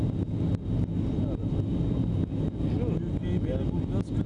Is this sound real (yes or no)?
yes